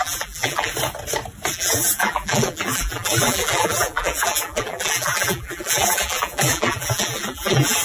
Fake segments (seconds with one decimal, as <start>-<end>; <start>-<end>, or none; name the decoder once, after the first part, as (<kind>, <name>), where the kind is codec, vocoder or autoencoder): 0.0-0.7 (vocoder, BigVGAN v2); 1.5-7.8